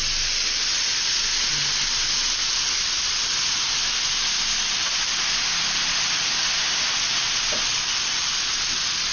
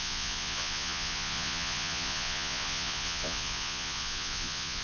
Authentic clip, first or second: first